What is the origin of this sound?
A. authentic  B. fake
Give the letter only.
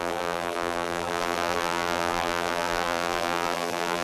B